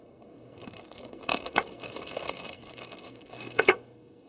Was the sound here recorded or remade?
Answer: remade